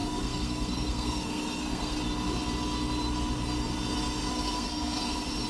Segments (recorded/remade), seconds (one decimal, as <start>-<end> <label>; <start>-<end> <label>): 0.0-2.0 remade; 2.0-4.3 recorded; 4.3-5.0 remade; 5.0-5.5 recorded